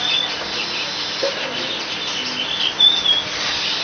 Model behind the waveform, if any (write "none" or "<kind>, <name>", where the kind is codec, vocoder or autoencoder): none